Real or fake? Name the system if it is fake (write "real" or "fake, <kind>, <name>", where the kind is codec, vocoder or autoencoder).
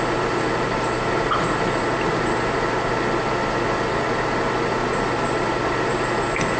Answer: real